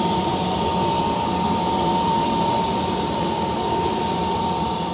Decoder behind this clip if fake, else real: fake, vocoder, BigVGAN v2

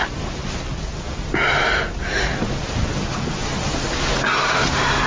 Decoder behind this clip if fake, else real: real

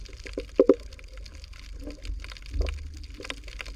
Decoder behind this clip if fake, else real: real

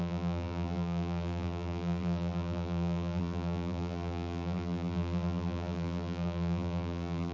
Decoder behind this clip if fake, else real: fake, vocoder, BigVGAN v2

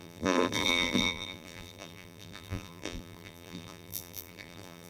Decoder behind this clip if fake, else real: fake, vocoder, BigVGAN v2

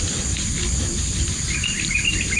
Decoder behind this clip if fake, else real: real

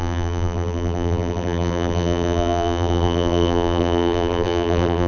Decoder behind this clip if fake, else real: fake, vocoder, BigVGAN v2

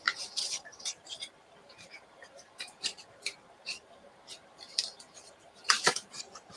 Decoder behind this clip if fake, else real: fake, vocoder, BigVGAN v2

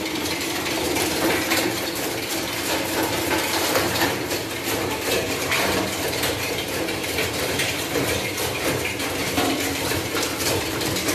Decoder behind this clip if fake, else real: fake, vocoder, BigVGAN v2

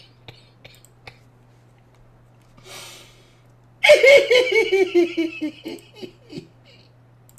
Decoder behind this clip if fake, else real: real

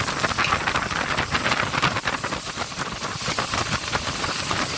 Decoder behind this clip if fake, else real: real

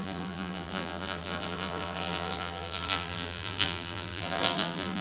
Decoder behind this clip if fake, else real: fake, vocoder, BigVGAN v2